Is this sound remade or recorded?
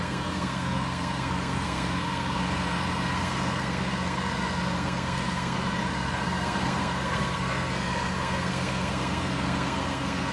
remade